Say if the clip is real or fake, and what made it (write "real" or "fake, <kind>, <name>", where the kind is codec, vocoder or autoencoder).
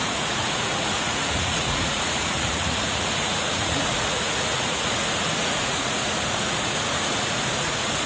fake, vocoder, Vocos